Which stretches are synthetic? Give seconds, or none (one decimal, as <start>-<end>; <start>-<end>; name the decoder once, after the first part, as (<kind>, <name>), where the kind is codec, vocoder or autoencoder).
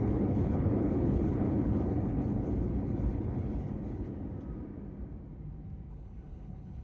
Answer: 0.0-4.1 (codec, HILCodec); 5.9-6.8